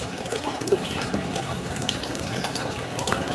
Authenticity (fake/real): fake